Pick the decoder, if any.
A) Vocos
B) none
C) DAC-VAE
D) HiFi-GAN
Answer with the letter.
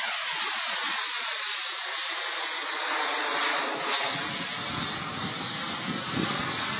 B